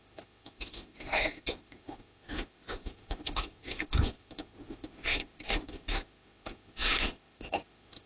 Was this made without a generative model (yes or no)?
no